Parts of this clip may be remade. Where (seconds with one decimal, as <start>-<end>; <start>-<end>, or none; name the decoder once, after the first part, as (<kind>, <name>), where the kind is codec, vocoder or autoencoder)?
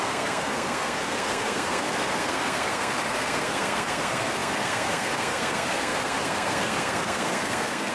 0.0-7.9 (codec, SNAC)